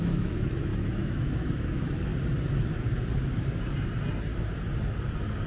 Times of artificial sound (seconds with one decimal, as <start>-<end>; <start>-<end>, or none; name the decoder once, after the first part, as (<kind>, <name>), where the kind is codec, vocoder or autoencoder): 0.0-2.1 (autoencoder, DAC-VAE)